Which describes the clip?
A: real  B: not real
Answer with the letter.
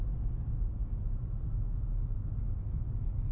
A